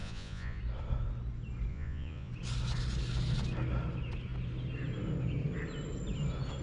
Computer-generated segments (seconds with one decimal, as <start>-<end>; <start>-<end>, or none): 0.0-0.6; 1.7-2.3

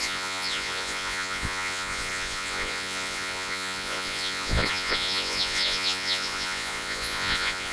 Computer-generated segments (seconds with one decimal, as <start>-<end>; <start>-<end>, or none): 0.0-7.7

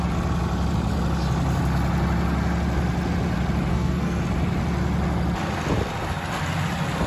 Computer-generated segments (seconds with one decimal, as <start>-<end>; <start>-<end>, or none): 3.7-4.2

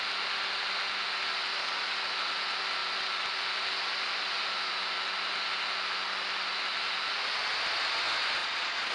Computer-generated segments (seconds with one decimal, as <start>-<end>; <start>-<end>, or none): 8.4-8.9